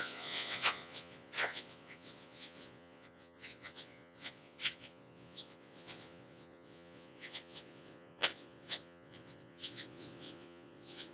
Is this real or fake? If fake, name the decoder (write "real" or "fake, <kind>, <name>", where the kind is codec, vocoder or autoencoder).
fake, vocoder, Vocos